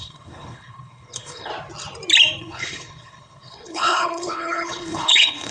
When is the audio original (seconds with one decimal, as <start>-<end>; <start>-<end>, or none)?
1.5-2.4